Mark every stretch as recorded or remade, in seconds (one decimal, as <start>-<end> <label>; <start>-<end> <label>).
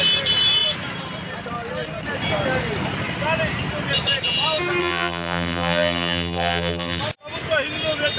0.0-4.8 recorded; 4.8-7.0 remade; 7.0-8.2 recorded